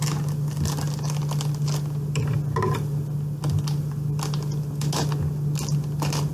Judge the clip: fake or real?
real